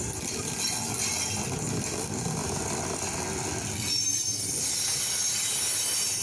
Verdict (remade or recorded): recorded